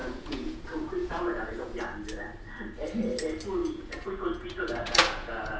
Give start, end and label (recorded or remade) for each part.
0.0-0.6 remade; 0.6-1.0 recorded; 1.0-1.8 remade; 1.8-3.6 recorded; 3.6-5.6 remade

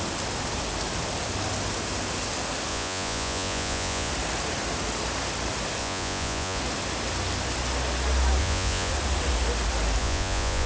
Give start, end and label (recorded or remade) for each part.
0.0-2.7 recorded; 2.7-4.1 remade; 4.1-5.8 recorded; 5.8-6.6 remade; 6.6-8.4 recorded; 8.4-8.9 remade; 8.9-10.0 recorded; 10.0-10.7 remade

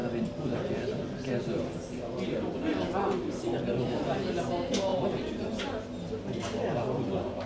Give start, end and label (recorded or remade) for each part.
0.0-7.5 recorded

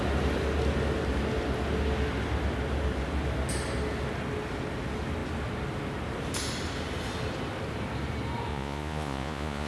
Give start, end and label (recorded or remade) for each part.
0.0-8.5 recorded; 8.5-9.7 remade

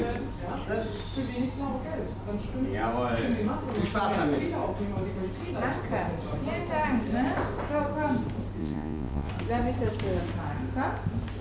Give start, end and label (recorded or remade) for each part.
0.0-8.6 recorded; 8.6-9.3 remade; 9.3-11.4 recorded

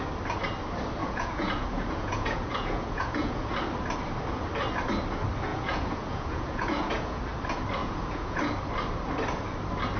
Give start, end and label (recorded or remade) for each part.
0.0-1.0 recorded; 1.0-3.5 remade; 3.5-5.5 recorded; 5.5-7.2 remade; 7.2-7.8 recorded; 7.8-8.4 remade; 8.4-10.0 recorded

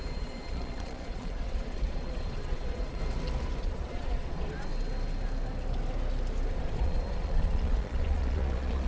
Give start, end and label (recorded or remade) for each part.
0.0-3.0 remade; 3.0-3.6 recorded; 3.6-4.7 remade; 4.7-6.5 recorded; 6.5-8.9 remade